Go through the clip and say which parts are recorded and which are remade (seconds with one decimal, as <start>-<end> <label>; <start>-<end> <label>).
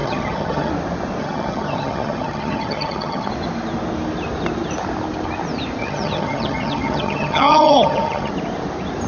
0.0-0.7 remade; 0.7-1.2 recorded; 1.2-3.3 remade; 3.3-5.8 recorded; 5.8-8.3 remade; 8.3-9.1 recorded